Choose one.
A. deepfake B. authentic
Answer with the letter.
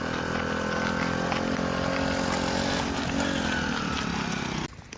B